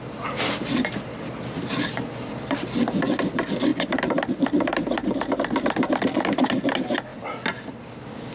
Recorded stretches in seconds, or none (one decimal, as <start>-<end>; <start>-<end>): 0.0-8.3